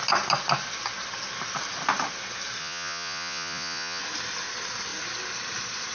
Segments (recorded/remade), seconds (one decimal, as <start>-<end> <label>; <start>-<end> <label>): 0.0-2.6 recorded; 2.6-4.0 remade; 4.0-5.9 recorded